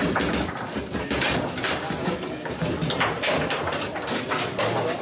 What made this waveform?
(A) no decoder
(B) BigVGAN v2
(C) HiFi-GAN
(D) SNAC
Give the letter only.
A